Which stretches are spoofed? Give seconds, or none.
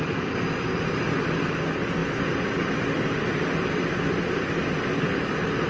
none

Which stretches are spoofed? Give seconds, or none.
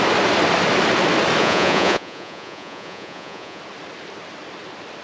1.4-3.6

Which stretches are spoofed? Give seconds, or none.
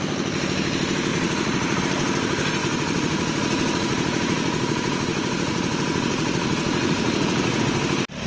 1.1-1.8; 2.6-7.6